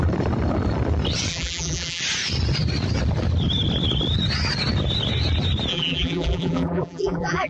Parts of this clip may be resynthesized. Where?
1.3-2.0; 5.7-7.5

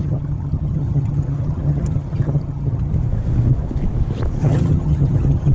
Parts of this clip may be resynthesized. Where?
0.0-2.9; 4.4-5.5

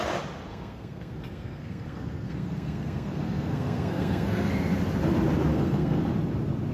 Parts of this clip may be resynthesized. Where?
0.5-4.5; 5.5-6.0

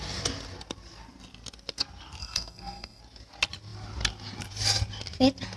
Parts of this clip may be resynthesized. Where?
2.2-3.0

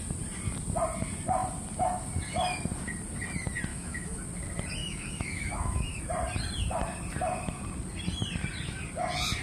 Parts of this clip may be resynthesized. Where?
3.7-4.2; 4.8-6.0